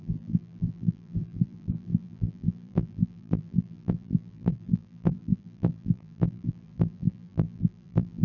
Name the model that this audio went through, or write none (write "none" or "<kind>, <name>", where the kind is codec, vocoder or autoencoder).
vocoder, BigVGAN v2